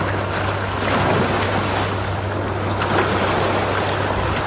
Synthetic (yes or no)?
no